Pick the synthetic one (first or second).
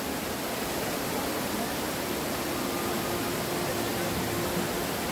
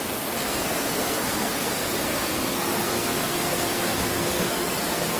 second